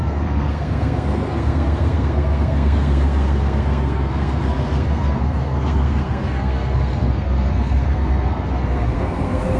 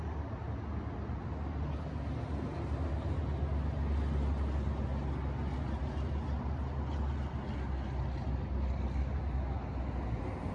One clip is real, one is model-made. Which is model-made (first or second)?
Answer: first